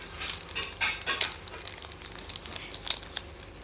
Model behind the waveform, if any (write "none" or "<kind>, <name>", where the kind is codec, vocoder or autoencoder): none